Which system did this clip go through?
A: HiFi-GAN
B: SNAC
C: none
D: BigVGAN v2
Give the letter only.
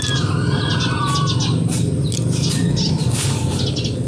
C